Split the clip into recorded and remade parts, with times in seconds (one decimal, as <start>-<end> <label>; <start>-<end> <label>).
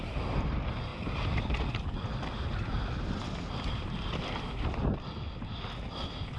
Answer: 0.0-6.4 recorded